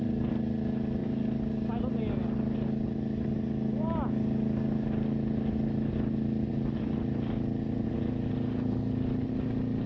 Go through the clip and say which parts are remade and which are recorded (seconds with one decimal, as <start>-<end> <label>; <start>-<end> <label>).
0.0-9.9 recorded